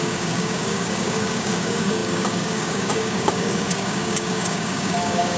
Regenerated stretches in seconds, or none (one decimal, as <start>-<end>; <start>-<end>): 0.0-5.4